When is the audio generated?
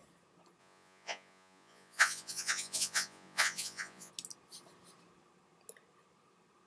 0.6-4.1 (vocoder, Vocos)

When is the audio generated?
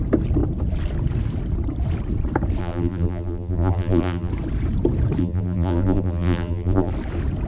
2.6-4.3 (vocoder, BigVGAN v2); 5.2-6.9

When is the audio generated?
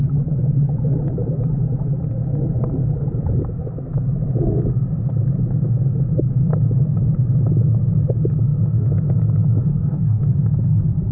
9.7-10.3 (codec, DAC)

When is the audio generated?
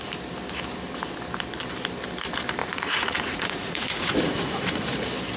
2.6-4.6 (vocoder, Vocos)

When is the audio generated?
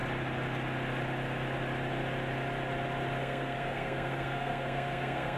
3.2-5.4 (codec, SNAC)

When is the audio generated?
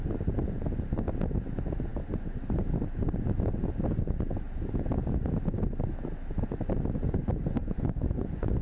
7.6-8.6 (vocoder, Vocos)